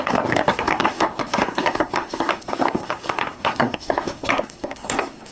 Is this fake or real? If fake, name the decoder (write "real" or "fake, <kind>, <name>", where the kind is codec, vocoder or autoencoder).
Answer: fake, codec, SNAC